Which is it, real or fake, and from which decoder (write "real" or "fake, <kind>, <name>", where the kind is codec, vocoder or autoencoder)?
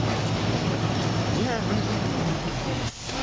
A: real